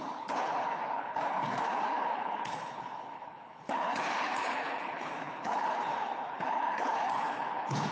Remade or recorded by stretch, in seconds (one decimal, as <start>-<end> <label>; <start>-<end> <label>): 0.0-7.9 remade